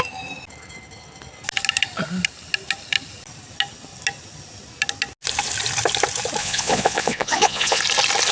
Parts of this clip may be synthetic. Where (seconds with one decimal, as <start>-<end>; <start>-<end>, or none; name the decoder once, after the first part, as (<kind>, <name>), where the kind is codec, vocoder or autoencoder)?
6.4-7.8 (vocoder, Vocos)